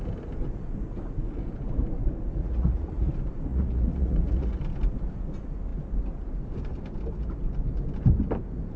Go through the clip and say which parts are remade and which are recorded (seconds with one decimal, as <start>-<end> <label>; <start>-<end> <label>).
0.0-2.4 recorded; 2.4-3.1 remade; 3.1-3.5 recorded; 3.5-4.6 remade; 4.6-8.8 recorded